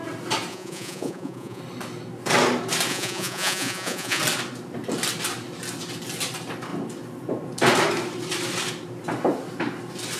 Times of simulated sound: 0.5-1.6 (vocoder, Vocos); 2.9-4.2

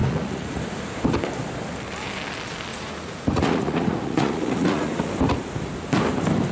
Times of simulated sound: 0.0-0.6 (vocoder, Vocos); 2.7-5.1

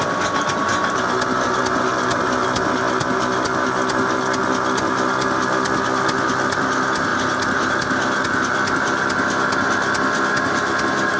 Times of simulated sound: none

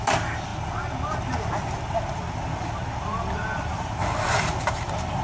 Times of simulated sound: 0.0-0.5 (vocoder, BigVGAN v2); 3.6-4.0; 4.7-5.2

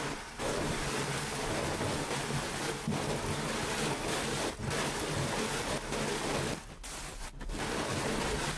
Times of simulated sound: none

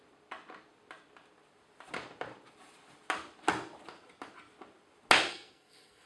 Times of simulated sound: 5.3-6.1 (codec, SNAC)

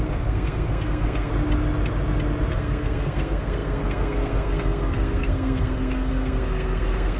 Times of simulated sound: 0.0-1.3 (codec, SNAC); 2.5-7.2

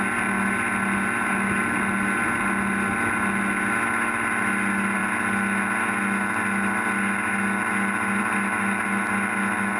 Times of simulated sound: none